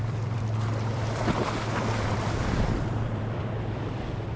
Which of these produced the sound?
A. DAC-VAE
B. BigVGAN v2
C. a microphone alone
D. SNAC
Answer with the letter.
B